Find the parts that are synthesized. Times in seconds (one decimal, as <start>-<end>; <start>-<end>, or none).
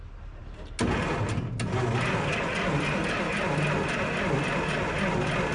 none